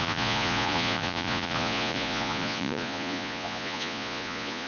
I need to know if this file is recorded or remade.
remade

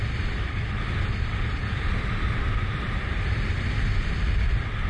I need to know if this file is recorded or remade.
recorded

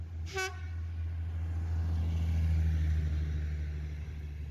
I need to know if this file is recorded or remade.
recorded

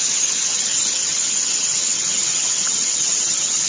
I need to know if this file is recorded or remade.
remade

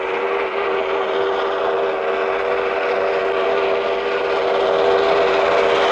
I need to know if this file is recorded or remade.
recorded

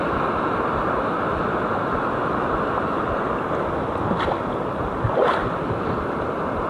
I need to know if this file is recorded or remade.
recorded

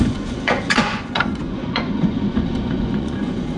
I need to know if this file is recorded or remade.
remade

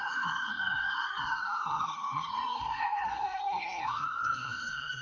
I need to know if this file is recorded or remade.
remade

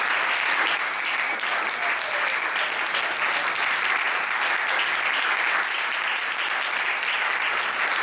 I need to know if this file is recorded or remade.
remade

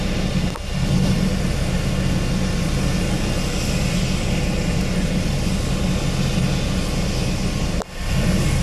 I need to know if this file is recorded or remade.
recorded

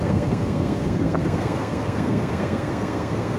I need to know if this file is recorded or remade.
remade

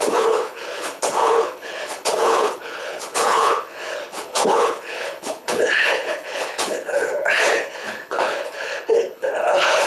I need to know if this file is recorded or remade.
remade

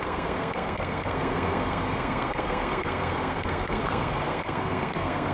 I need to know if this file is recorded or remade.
remade